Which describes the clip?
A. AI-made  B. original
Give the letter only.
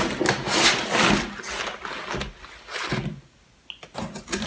B